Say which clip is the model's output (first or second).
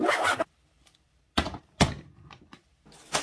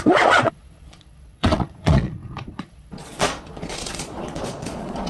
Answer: second